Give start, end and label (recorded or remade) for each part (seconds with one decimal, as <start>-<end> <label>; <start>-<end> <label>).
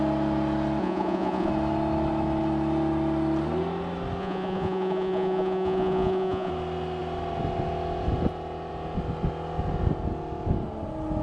0.0-0.8 recorded; 0.8-1.5 remade; 1.5-4.2 recorded; 4.2-6.5 remade; 6.5-11.2 recorded